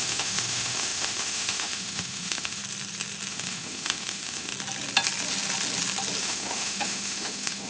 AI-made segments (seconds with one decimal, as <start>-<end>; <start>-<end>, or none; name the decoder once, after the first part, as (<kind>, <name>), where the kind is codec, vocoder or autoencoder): 0.0-2.6 (autoencoder, DAC-VAE); 3.3-4.5; 6.2-7.7